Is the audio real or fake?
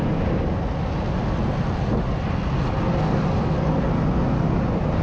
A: real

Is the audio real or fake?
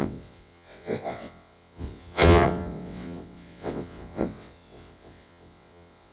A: fake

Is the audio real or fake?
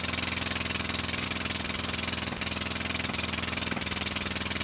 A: real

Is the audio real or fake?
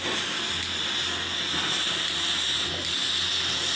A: real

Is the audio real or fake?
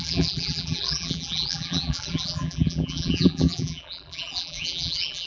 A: fake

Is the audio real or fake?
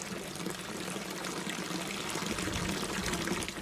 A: real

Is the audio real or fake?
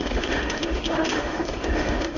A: fake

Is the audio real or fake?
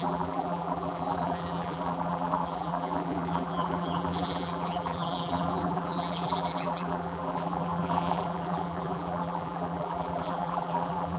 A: fake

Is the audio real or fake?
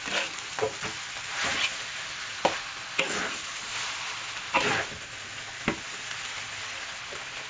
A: real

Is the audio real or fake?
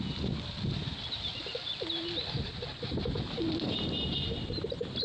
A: real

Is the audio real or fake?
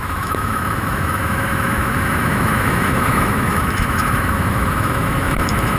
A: fake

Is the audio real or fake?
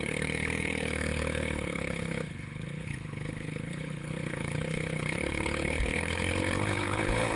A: fake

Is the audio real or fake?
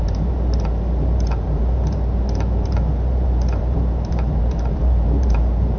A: fake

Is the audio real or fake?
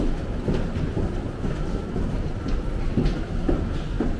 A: real